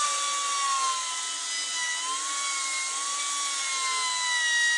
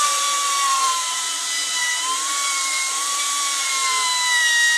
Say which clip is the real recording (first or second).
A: first